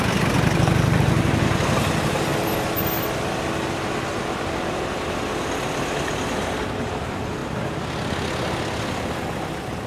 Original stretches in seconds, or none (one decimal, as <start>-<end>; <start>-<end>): 0.0-9.9